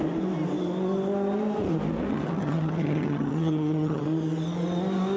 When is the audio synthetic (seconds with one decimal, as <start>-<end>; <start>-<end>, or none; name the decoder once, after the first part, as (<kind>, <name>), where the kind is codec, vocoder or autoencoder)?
2.1-4.0 (vocoder, HiFi-GAN)